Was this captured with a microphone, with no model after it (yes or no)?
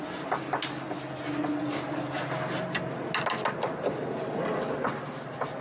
yes